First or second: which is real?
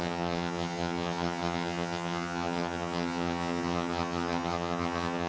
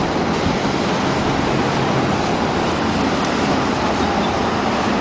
second